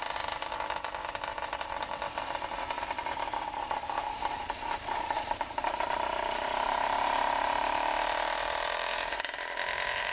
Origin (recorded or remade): remade